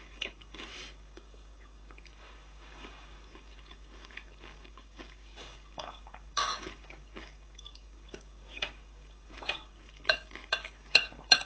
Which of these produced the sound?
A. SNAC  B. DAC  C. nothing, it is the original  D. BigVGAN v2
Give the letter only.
B